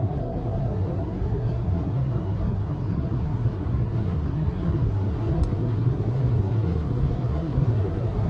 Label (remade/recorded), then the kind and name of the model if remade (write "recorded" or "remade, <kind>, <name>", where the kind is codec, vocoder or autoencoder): remade, codec, SNAC